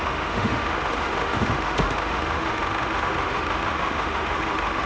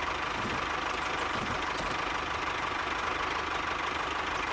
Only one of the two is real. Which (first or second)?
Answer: second